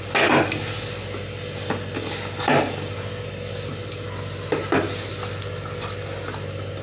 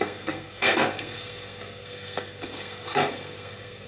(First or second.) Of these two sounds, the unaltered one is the first